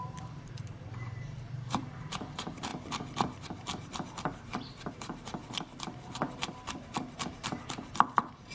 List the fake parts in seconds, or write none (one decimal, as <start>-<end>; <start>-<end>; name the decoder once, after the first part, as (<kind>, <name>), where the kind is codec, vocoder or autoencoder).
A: 0.0-2.7 (vocoder, BigVGAN v2); 4.9-5.4; 7.3-8.5